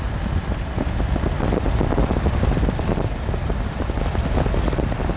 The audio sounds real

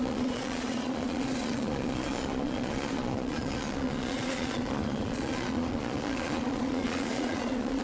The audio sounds fake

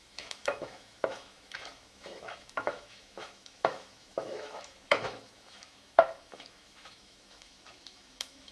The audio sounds fake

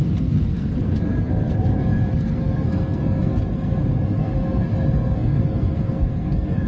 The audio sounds fake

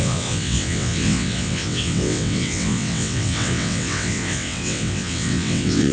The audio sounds fake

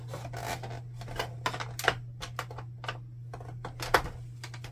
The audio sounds real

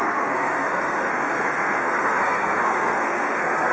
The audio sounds fake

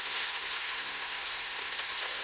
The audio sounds fake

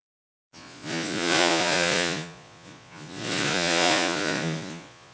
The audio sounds fake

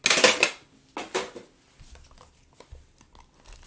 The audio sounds real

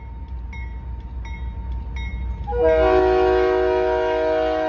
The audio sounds real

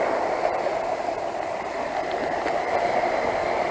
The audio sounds real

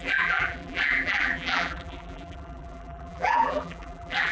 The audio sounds fake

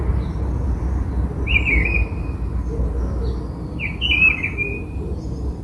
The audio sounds real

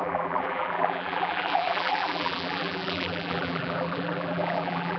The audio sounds fake